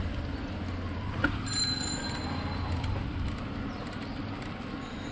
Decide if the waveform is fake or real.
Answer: real